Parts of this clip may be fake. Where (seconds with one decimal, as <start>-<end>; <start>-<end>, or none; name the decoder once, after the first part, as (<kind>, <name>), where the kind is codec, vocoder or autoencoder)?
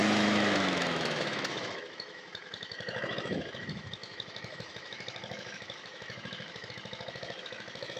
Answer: 0.0-8.0 (autoencoder, DAC-VAE)